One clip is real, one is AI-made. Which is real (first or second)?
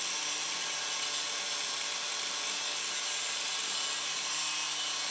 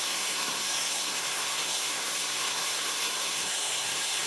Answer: first